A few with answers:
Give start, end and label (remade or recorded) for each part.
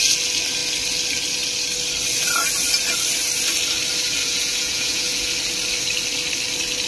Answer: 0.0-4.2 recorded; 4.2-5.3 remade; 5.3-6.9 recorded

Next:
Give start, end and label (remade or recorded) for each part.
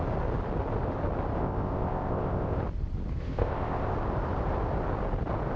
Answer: 0.0-1.4 recorded; 1.4-2.6 remade; 2.6-3.2 recorded; 3.2-3.9 remade; 3.9-5.6 recorded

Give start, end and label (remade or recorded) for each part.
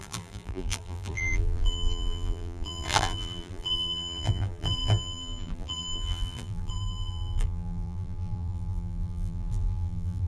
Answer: 0.0-10.3 remade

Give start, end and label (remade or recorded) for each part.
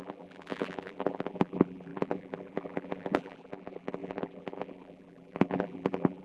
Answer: 0.0-6.2 remade